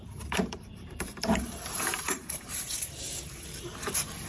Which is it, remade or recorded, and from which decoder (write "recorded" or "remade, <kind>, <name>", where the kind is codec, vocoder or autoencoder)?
remade, vocoder, BigVGAN v2